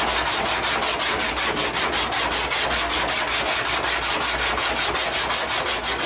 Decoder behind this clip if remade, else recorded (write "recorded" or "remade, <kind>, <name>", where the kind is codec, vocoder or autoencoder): recorded